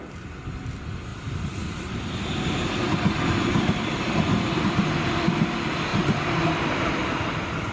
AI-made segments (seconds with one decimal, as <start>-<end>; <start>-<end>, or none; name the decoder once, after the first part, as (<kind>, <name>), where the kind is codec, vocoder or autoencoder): none